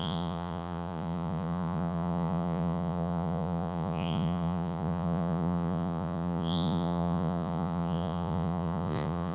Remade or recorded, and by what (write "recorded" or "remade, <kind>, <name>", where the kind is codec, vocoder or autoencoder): remade, vocoder, Vocos